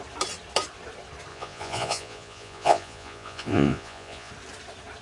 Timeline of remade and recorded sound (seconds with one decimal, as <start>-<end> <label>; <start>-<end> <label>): 0.0-1.3 recorded; 1.3-4.3 remade; 4.3-5.0 recorded

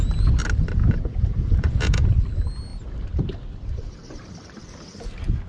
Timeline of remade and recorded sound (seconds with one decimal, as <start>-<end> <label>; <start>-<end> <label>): 0.0-0.8 recorded; 0.8-2.2 remade; 2.2-5.5 recorded